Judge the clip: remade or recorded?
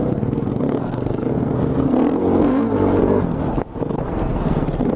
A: remade